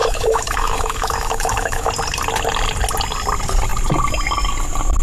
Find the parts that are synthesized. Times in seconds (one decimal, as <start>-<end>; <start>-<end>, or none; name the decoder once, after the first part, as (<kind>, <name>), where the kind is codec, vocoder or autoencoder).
0.0-1.9 (autoencoder, DAC-VAE)